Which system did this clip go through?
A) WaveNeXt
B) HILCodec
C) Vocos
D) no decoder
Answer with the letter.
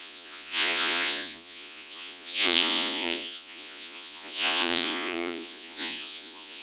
C